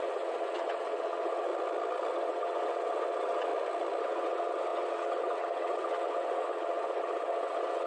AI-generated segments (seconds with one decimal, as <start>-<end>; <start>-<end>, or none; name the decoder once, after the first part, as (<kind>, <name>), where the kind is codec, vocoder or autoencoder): 0.0-1.5 (vocoder, WaveNeXt); 2.1-3.5; 4.0-7.9